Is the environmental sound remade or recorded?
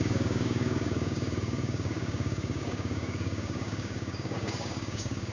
remade